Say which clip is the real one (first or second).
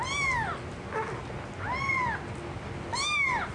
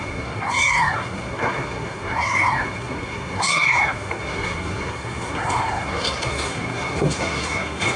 first